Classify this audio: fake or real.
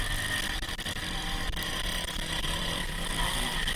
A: fake